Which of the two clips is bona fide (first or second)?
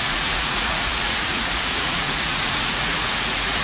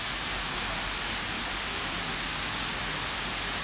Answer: second